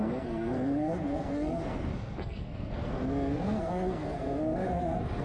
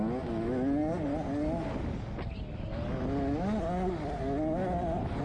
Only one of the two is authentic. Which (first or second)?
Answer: second